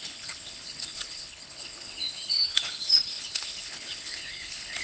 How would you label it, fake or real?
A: fake